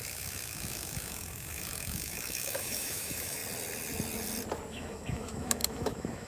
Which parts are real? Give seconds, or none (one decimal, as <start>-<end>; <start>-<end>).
3.4-4.7